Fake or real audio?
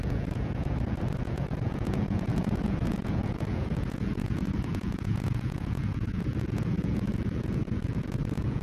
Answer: fake